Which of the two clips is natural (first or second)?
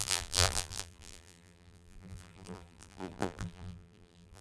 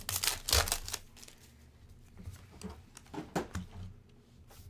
second